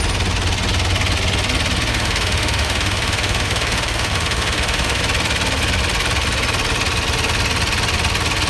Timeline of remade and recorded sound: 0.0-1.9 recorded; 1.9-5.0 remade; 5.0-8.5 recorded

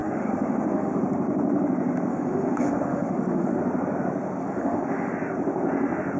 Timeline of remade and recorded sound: 0.0-1.0 remade; 1.0-2.1 recorded; 2.1-3.6 remade; 3.6-4.4 recorded; 4.4-5.1 remade; 5.1-6.2 recorded

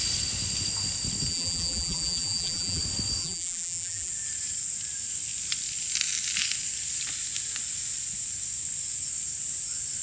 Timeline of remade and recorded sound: 0.0-1.3 recorded; 1.3-2.8 remade; 2.8-3.2 recorded; 3.2-4.1 remade; 4.1-10.0 recorded

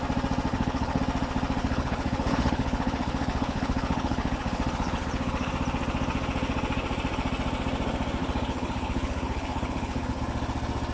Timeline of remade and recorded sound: 0.0-0.5 recorded; 0.5-1.0 remade; 1.0-1.6 recorded; 1.6-5.5 remade; 5.5-8.2 recorded; 8.2-10.2 remade; 10.2-10.9 recorded

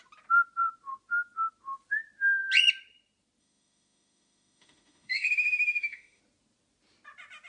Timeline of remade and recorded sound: 0.0-3.4 recorded; 3.4-6.2 remade; 6.2-7.5 recorded

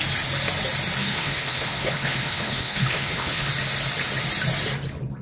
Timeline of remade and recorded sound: 0.0-1.0 recorded; 1.0-3.5 remade; 3.5-5.2 recorded

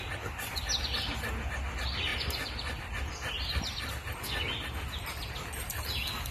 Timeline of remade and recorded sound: 0.0-2.1 recorded; 2.1-3.9 remade; 3.9-6.3 recorded

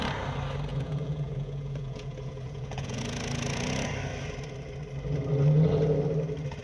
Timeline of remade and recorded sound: 0.0-0.7 recorded; 0.7-3.0 remade; 3.0-6.6 recorded